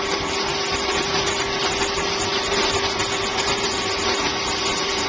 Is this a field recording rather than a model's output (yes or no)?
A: yes